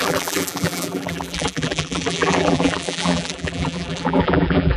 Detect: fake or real fake